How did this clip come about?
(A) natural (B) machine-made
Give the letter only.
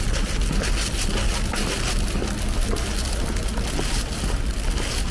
A